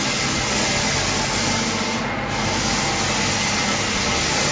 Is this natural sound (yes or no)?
yes